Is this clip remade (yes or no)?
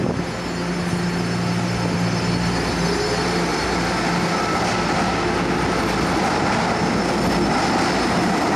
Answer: no